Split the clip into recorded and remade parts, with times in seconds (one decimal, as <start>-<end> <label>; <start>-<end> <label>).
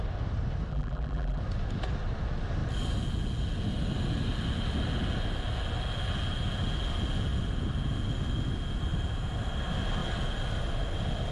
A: 0.0-0.7 recorded; 0.7-1.4 remade; 1.4-11.3 recorded